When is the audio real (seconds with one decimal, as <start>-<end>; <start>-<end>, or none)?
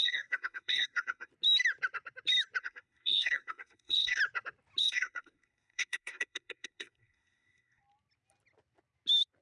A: 1.3-2.6; 4.2-4.8; 7.8-9.4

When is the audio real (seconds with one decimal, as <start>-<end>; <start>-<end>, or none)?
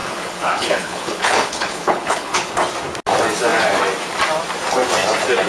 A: 2.5-5.5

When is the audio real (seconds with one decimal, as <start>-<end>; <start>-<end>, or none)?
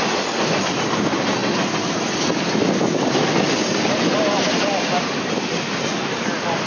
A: 0.0-6.7